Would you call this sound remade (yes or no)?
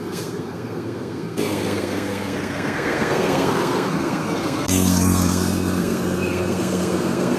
yes